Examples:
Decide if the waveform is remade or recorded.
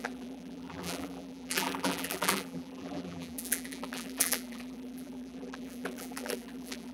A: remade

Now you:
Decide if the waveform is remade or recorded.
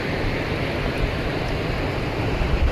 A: remade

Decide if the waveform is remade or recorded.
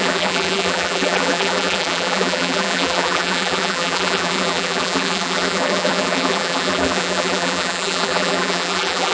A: remade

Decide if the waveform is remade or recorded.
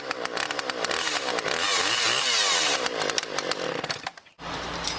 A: recorded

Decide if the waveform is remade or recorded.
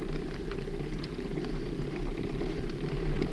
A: remade